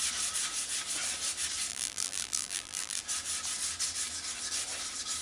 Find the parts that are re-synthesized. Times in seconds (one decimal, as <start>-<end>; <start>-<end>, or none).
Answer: 1.7-3.0